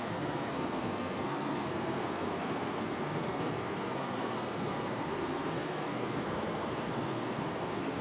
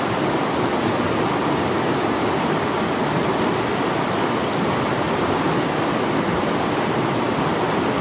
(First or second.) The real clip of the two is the second